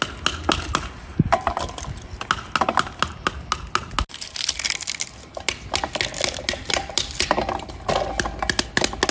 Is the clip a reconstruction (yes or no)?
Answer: no